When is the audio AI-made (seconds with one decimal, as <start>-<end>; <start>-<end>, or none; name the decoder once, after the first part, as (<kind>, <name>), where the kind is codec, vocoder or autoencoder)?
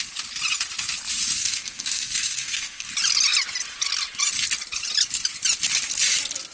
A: 1.4-2.9 (codec, SNAC)